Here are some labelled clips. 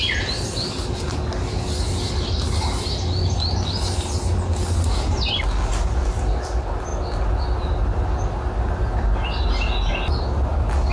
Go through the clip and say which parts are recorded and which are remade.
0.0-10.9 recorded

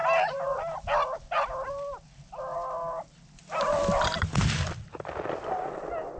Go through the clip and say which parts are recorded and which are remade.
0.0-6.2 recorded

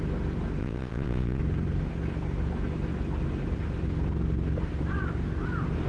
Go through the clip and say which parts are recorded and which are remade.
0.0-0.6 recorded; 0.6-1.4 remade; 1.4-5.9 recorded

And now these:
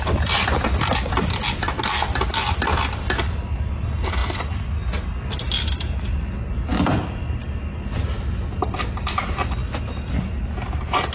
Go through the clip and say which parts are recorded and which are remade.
0.0-11.1 recorded

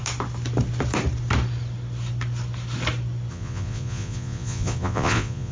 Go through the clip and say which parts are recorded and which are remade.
0.0-3.3 recorded; 3.3-5.5 remade

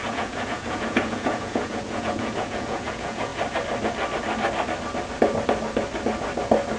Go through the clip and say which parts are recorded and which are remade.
0.0-3.3 remade; 3.3-6.8 recorded